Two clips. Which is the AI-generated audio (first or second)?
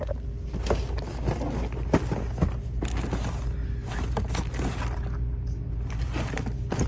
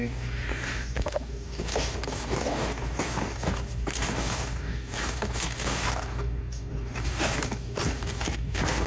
second